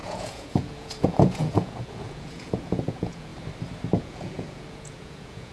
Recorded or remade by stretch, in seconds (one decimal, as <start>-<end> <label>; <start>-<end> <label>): 0.0-3.3 remade; 3.3-3.9 recorded; 3.9-5.5 remade